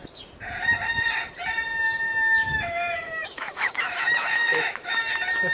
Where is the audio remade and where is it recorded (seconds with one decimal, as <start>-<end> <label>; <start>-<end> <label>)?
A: 0.0-2.5 recorded; 2.5-5.0 remade; 5.0-5.5 recorded